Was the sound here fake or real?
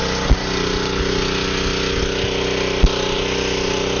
real